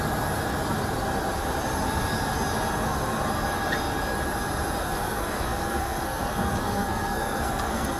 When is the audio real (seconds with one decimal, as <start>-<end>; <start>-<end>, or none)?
0.0-4.8